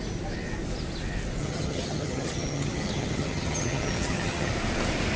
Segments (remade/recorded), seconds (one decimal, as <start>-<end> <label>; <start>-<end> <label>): 0.0-1.4 recorded; 1.4-4.5 remade; 4.5-5.2 recorded